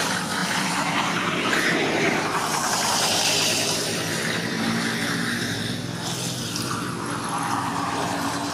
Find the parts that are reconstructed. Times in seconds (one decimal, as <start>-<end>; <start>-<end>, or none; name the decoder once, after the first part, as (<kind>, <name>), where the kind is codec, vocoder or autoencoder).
0.4-4.6 (vocoder, BigVGAN v2)